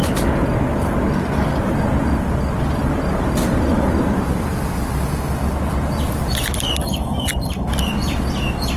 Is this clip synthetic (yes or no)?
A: no